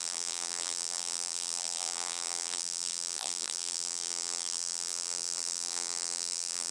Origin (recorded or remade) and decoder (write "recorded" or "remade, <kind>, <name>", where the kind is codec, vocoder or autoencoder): remade, vocoder, BigVGAN v2